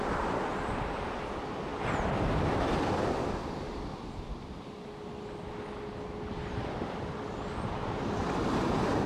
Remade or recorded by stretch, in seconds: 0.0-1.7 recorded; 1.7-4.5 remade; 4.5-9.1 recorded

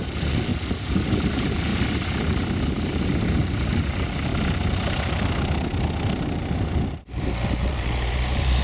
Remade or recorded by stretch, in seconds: 0.0-0.5 remade; 0.5-1.1 recorded; 1.1-1.7 remade; 1.7-2.2 recorded; 2.2-4.3 remade; 4.3-6.4 recorded; 6.4-8.6 remade